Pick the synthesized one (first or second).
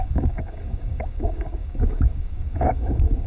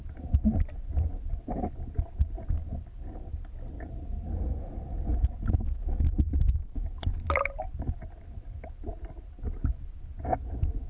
first